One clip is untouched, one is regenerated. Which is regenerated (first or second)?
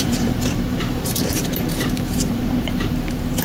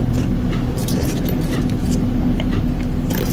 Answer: first